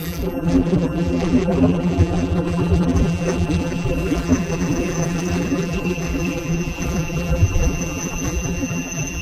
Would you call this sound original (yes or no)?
no